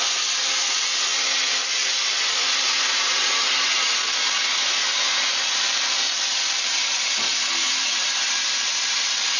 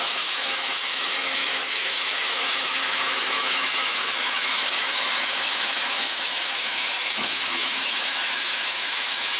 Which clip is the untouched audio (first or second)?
first